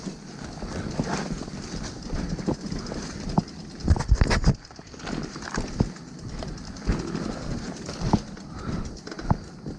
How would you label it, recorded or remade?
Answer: recorded